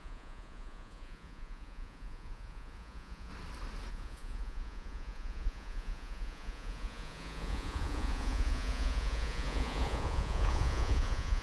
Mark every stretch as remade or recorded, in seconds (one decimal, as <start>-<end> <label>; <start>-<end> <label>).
0.0-3.3 remade; 3.3-3.9 recorded; 3.9-11.4 remade